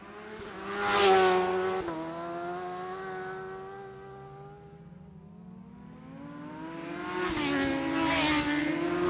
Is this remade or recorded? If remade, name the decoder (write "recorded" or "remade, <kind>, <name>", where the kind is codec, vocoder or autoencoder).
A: recorded